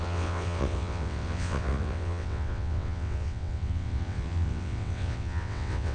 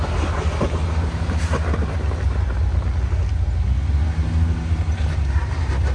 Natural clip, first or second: second